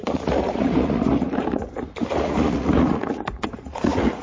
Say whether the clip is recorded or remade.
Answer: remade